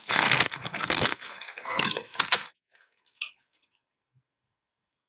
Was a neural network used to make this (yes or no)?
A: yes